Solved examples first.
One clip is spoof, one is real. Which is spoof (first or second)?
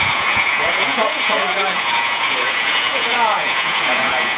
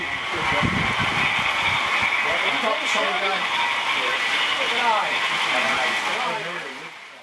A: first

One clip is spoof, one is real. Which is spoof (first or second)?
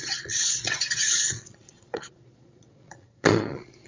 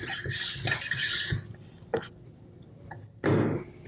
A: first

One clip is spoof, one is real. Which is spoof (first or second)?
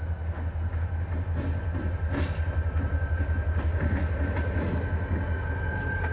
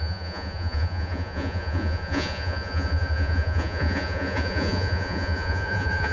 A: second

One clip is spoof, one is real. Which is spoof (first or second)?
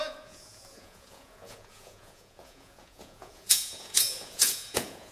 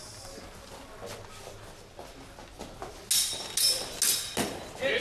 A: first